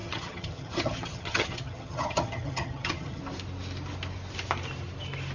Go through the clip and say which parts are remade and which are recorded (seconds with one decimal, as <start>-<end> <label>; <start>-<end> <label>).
0.0-3.2 remade; 3.2-5.3 recorded

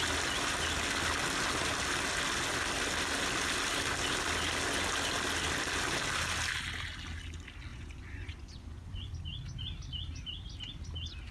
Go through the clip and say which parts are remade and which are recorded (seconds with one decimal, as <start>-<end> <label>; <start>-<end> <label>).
0.0-7.7 recorded; 7.7-9.1 remade; 9.1-11.3 recorded

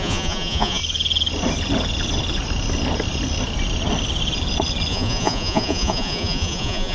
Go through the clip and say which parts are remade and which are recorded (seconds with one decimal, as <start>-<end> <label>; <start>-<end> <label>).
0.0-0.8 remade; 0.8-4.9 recorded; 4.9-6.9 remade

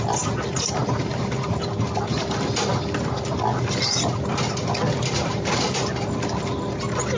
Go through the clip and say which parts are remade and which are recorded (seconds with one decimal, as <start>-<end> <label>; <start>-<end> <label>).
0.0-7.2 recorded

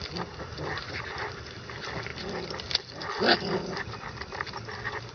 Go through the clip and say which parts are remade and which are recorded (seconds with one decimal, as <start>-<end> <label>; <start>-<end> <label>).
0.0-5.1 recorded

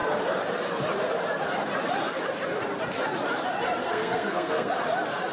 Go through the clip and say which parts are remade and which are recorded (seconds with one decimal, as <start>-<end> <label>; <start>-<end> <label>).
0.0-3.8 recorded; 3.8-4.7 remade; 4.7-5.3 recorded